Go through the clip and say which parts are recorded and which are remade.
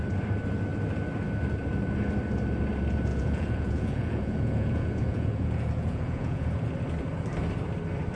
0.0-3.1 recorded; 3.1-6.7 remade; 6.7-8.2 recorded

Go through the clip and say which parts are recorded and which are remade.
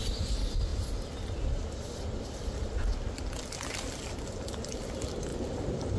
0.0-6.0 recorded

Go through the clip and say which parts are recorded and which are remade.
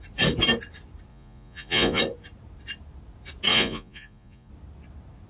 0.0-1.1 recorded; 1.1-2.0 remade; 2.0-3.5 recorded; 3.5-4.5 remade; 4.5-5.3 recorded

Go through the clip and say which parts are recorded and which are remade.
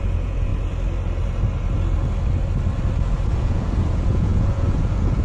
0.0-0.5 remade; 0.5-3.4 recorded; 3.4-5.2 remade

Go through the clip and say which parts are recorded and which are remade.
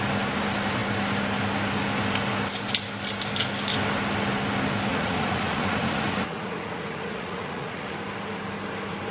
0.0-4.9 recorded; 4.9-8.0 remade; 8.0-9.1 recorded